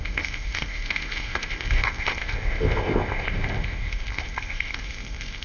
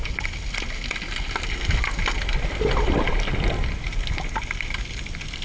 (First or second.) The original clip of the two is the second